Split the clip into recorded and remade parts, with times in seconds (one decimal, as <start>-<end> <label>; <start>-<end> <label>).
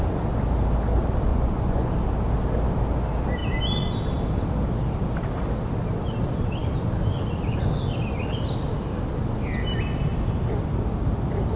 0.0-1.3 recorded; 1.3-1.9 remade; 1.9-11.6 recorded